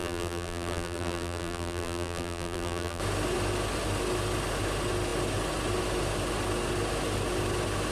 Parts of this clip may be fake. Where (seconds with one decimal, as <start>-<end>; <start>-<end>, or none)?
0.0-3.0